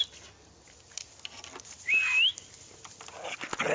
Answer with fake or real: real